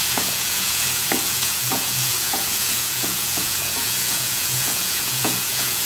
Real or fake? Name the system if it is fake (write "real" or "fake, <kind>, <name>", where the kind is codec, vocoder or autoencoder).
fake, vocoder, Vocos